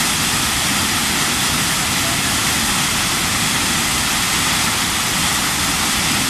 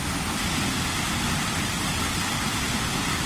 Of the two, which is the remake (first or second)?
second